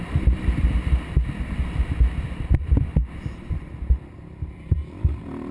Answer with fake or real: real